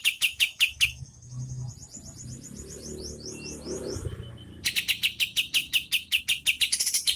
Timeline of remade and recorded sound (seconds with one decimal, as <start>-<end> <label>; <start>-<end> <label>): 0.0-1.7 remade; 1.7-5.6 recorded; 5.6-6.2 remade; 6.2-7.2 recorded